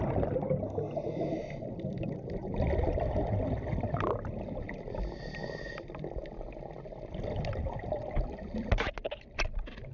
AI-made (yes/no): no